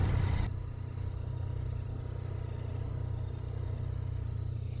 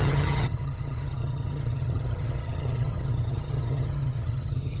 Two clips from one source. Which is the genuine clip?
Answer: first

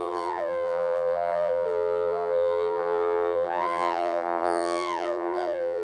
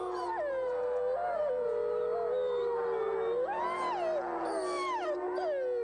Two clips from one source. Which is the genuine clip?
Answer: second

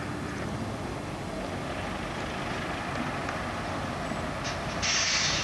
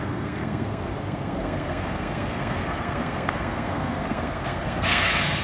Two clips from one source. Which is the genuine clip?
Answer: first